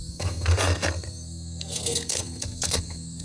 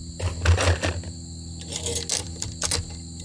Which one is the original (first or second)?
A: second